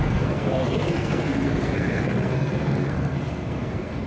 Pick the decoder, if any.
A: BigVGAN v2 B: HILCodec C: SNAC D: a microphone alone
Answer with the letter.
C